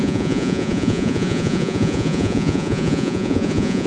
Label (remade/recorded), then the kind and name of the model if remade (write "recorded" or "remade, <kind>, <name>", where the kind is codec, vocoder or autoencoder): remade, vocoder, Vocos